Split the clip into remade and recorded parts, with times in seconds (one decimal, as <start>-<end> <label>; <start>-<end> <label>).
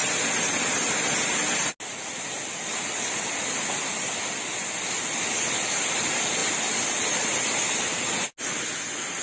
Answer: 0.0-9.2 recorded